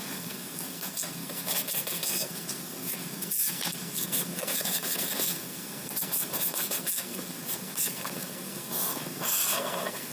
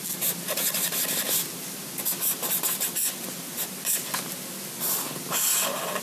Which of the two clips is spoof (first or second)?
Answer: first